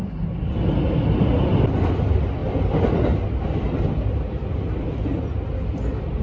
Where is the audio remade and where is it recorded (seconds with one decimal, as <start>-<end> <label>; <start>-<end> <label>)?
0.0-6.2 recorded